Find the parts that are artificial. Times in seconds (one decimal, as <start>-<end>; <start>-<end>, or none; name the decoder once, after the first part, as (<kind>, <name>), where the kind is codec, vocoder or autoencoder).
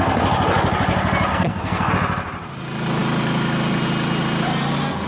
1.3-1.9 (codec, SNAC)